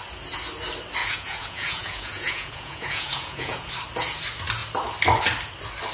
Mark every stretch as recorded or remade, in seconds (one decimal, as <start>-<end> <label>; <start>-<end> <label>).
0.0-1.0 recorded; 1.0-3.7 remade; 3.7-5.9 recorded